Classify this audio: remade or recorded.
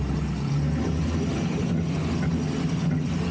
recorded